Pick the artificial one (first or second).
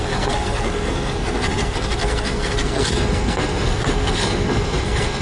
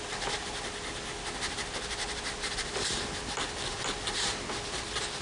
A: first